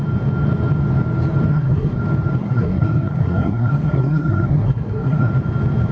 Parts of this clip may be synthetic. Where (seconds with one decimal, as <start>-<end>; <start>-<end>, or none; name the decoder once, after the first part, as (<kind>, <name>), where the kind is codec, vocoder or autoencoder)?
1.5-2.0 (codec, SNAC); 2.4-5.3